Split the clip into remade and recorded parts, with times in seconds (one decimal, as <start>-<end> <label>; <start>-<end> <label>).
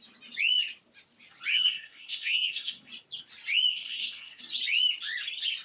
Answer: 0.0-1.5 recorded; 1.5-2.9 remade; 2.9-3.7 recorded; 3.7-4.4 remade; 4.4-5.6 recorded